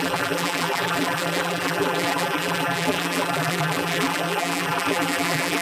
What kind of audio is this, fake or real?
fake